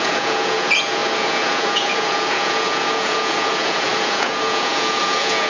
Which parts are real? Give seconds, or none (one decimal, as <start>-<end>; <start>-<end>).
none